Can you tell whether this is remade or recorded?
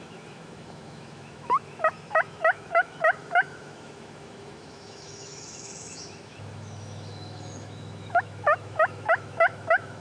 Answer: remade